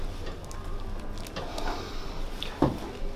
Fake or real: real